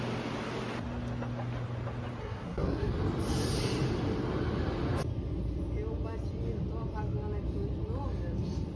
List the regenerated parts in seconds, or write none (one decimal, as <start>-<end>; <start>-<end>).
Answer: 2.2-2.9